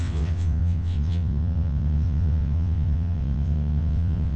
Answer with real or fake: fake